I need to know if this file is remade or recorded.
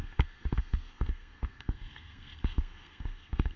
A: remade